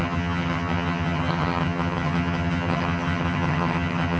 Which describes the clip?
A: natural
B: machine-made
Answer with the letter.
B